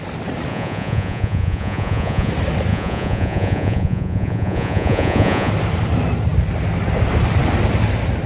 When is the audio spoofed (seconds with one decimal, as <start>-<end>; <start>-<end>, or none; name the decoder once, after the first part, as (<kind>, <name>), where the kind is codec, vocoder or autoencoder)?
0.5-2.3 (vocoder, Vocos); 2.7-5.5